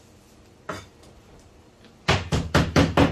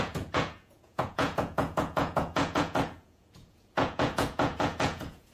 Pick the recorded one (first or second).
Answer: first